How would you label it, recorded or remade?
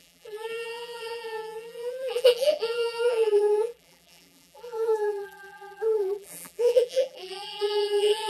remade